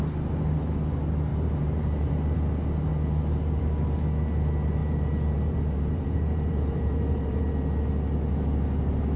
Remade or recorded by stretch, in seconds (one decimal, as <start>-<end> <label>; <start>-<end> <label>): 0.0-1.3 recorded; 1.3-2.1 remade; 2.1-4.8 recorded; 4.8-7.4 remade; 7.4-9.2 recorded